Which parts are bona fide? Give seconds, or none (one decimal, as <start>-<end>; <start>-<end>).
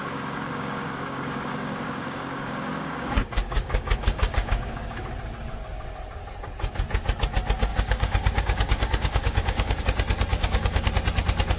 5.1-7.7; 9.8-10.3; 10.9-11.6